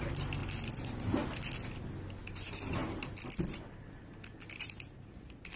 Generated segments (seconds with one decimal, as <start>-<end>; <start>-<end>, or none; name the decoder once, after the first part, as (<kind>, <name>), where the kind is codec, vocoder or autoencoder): 0.0-0.4 (vocoder, BigVGAN v2); 2.2-2.8; 4.6-5.6